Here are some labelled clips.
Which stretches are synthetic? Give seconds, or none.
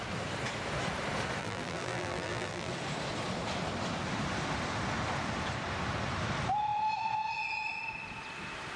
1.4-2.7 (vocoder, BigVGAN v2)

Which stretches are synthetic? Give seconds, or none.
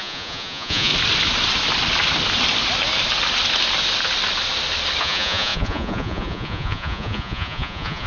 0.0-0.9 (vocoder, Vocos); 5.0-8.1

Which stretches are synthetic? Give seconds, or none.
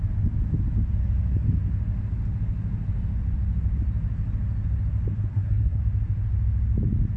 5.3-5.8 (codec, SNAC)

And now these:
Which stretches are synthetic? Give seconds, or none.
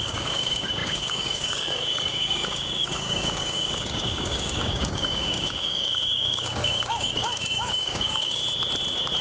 0.0-8.4 (codec, DAC)